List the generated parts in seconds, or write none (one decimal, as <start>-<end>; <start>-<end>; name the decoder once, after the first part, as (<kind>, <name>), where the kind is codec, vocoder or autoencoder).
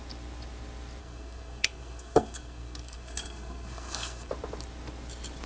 1.0-4.3 (codec, SNAC)